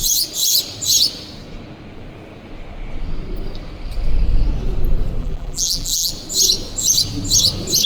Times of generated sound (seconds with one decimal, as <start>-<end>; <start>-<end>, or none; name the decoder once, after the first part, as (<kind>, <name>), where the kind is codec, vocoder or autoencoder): 5.2-6.1 (vocoder, BigVGAN v2)